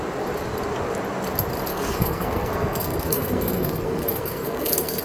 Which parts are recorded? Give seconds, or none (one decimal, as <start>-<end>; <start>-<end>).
0.0-1.7